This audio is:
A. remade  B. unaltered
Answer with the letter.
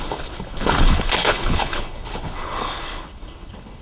A